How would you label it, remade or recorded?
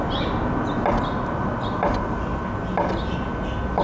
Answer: recorded